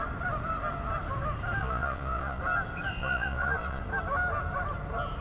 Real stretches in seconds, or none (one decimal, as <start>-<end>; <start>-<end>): 0.0-1.6; 2.4-3.0; 3.8-5.2